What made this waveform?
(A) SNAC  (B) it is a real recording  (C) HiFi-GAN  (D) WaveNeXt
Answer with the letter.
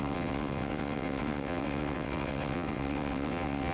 D